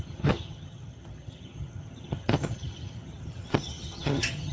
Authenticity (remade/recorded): remade